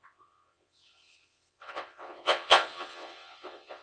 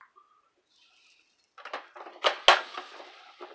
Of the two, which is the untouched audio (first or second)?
second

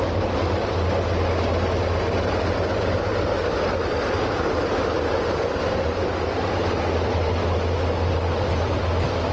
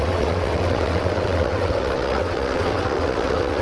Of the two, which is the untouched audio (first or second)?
first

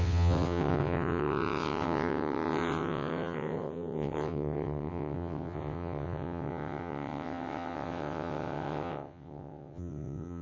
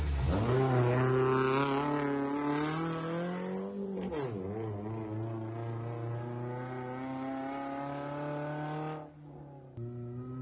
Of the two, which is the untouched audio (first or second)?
second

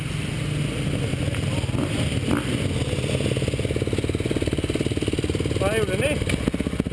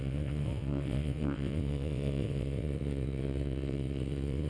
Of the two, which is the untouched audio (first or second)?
first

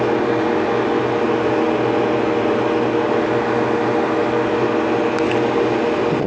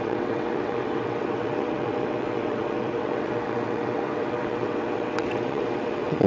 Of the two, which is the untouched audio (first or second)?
first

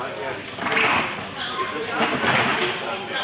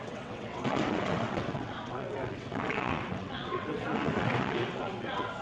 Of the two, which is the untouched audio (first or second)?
first